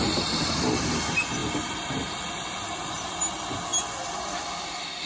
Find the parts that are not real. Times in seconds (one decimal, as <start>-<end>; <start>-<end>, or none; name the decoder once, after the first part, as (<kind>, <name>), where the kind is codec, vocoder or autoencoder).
none